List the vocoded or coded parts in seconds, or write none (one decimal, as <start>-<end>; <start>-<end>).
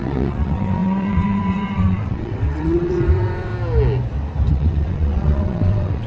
0.0-3.5; 4.5-6.1